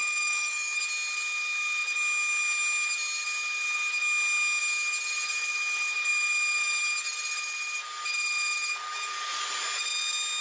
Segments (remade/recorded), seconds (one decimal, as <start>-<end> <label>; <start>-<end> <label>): 0.0-0.8 remade; 0.8-10.4 recorded